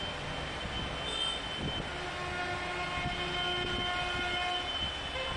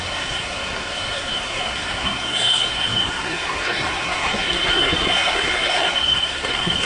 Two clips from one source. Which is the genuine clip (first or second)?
first